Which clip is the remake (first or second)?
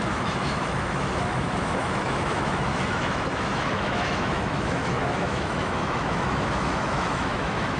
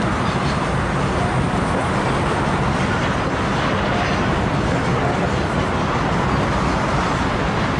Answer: first